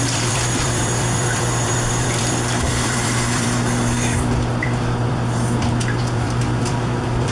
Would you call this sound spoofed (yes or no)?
yes